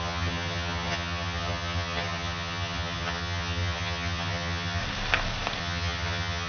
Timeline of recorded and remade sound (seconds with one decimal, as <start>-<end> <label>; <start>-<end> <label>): 0.0-4.8 remade; 4.8-5.6 recorded; 5.6-6.5 remade